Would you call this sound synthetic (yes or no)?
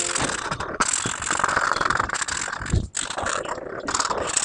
no